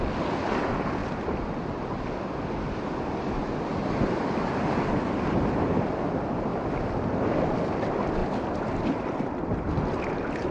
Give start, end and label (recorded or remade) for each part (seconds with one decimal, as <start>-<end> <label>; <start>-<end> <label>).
0.0-10.5 recorded